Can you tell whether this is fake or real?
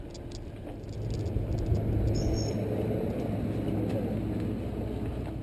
real